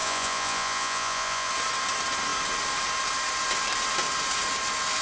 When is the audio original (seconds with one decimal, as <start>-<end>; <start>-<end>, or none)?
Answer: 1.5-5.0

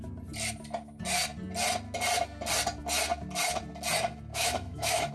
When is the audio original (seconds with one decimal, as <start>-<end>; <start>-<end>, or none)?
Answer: 0.0-4.3

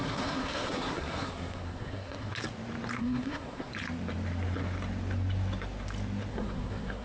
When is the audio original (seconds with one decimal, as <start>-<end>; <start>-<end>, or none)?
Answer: 2.3-3.0; 3.7-6.3

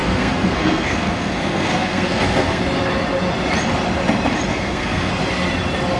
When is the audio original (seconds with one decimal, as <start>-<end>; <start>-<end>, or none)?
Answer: 2.6-4.5; 5.1-6.0